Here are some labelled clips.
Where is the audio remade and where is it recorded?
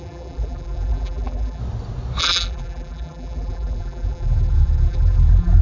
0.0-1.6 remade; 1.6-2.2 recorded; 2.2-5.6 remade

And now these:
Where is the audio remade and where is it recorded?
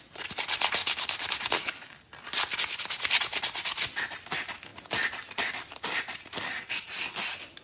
0.0-0.8 recorded; 0.8-2.0 remade; 2.0-7.6 recorded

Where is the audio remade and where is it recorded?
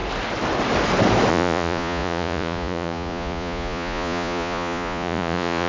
0.0-1.3 recorded; 1.3-5.7 remade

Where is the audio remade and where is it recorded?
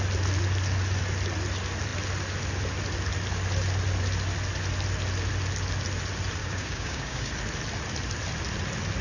0.0-6.4 recorded; 6.4-7.3 remade; 7.3-9.0 recorded